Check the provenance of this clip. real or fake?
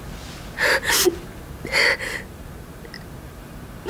real